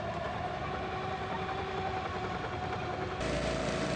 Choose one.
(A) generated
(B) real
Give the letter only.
B